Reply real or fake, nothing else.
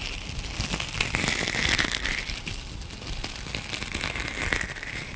real